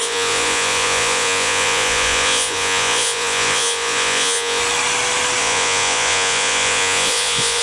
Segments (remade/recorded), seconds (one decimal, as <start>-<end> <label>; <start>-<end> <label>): 0.0-4.6 remade; 4.6-5.4 recorded; 5.4-7.6 remade